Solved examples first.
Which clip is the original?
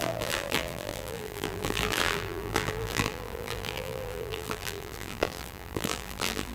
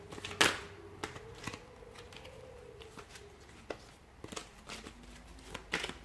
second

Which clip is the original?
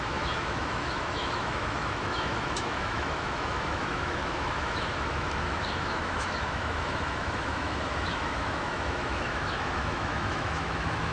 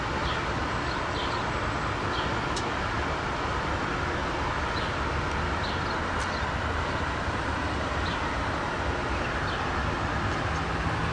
second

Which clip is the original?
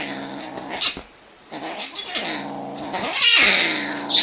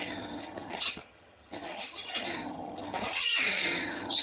first